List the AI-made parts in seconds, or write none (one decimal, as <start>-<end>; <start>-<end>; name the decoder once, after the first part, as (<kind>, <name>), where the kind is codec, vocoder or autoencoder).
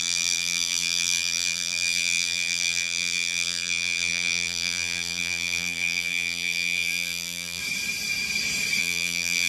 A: 0.0-7.6 (vocoder, BigVGAN v2); 8.8-9.5